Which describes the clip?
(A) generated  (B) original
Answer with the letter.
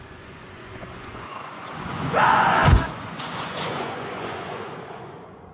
A